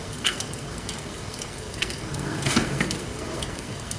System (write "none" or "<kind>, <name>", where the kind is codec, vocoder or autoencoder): codec, SNAC